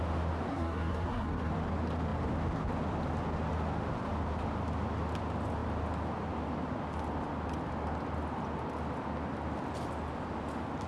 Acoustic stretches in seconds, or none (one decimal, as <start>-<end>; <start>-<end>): 0.0-0.5; 1.5-10.9